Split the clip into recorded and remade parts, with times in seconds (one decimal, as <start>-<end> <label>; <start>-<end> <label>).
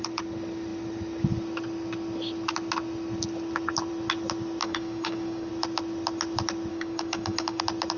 0.0-4.6 recorded; 4.6-5.5 remade; 5.5-6.7 recorded; 6.7-7.6 remade; 7.6-8.0 recorded